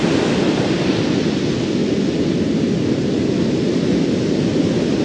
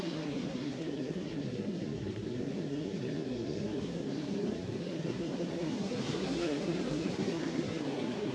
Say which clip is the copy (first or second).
second